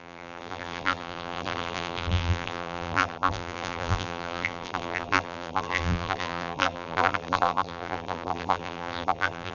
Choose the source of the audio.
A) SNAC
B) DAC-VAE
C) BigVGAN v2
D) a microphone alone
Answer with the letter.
C